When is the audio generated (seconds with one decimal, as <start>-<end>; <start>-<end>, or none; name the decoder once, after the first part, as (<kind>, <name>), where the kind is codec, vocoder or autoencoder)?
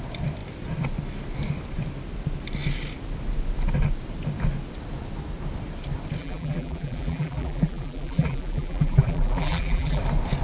6.2-10.0 (vocoder, BigVGAN v2)